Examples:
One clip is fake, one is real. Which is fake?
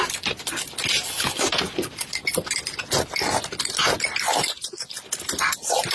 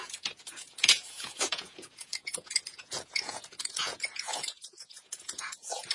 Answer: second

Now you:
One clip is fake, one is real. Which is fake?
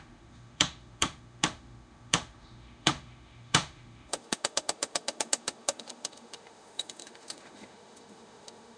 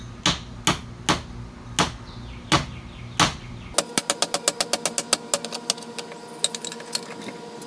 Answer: first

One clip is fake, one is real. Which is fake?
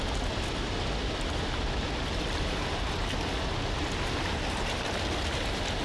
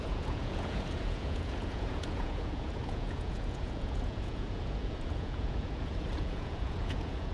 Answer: second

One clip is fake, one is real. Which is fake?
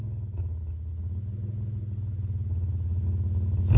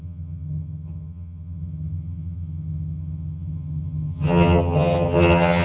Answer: second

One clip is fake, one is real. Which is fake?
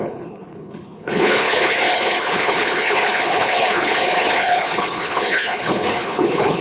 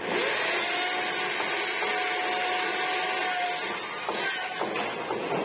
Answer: first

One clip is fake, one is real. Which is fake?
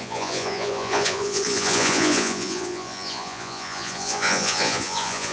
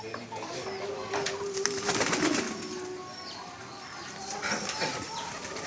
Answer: first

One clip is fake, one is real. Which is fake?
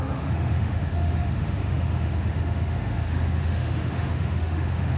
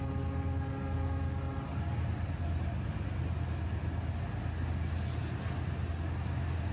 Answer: first